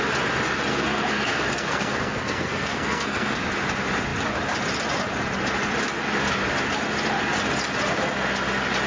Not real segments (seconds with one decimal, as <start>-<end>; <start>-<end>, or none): 0.7-3.4